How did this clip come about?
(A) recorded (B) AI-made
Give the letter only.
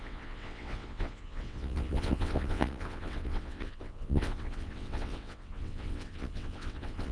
B